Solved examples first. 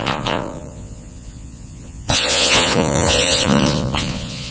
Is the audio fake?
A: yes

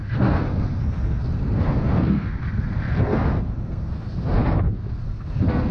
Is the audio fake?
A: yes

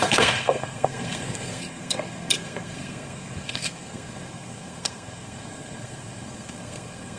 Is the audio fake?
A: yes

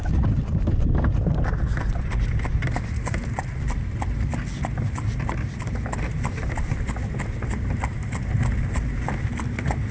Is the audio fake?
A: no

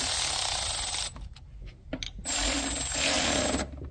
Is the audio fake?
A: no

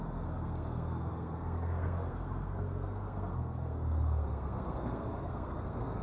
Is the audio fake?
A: yes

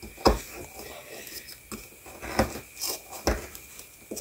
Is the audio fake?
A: no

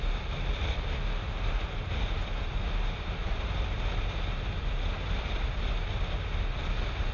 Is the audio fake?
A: no